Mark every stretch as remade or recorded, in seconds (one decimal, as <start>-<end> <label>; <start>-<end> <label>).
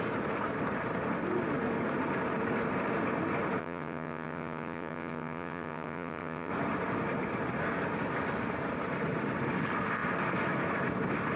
0.0-3.6 recorded; 3.6-6.5 remade; 6.5-11.4 recorded